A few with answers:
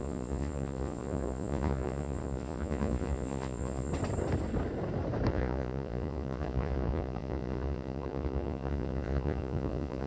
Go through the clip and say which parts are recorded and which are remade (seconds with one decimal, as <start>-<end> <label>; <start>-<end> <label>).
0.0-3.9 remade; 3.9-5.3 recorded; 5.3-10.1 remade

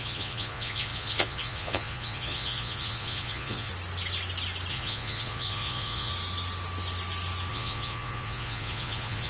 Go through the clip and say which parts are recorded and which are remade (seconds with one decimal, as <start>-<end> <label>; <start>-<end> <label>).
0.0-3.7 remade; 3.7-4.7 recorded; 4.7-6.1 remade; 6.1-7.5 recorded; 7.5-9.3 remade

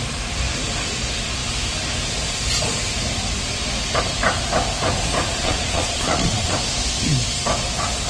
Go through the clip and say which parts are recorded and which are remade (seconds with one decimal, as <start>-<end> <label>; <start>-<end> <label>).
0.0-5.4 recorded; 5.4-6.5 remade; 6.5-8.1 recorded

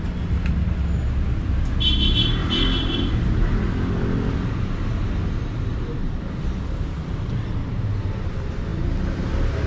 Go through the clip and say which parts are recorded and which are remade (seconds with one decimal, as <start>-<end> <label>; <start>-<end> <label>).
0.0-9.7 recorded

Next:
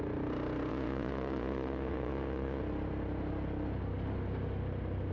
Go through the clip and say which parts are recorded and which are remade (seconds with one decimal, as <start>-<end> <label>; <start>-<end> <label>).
0.0-0.7 recorded; 0.7-2.6 remade; 2.6-5.1 recorded

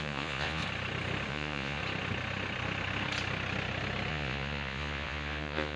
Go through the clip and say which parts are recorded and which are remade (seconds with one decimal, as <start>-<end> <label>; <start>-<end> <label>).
0.0-0.6 remade; 0.6-1.3 recorded; 1.3-1.8 remade; 1.8-4.1 recorded; 4.1-5.8 remade

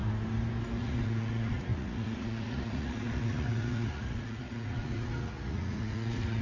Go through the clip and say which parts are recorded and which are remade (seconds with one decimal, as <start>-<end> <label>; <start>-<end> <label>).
0.0-0.8 recorded; 0.8-6.4 remade

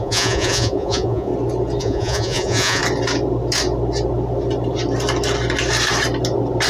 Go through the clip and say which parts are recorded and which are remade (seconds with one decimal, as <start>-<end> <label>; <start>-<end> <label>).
0.0-1.3 remade; 1.3-1.8 recorded; 1.8-2.8 remade; 2.8-6.7 recorded